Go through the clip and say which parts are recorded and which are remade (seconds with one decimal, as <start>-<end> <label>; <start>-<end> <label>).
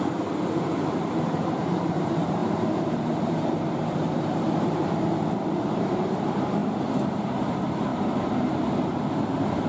0.0-9.7 remade